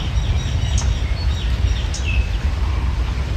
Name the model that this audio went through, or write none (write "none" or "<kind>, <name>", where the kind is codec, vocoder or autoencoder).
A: none